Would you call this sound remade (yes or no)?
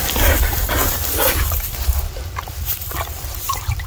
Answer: yes